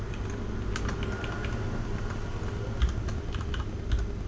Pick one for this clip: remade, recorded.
recorded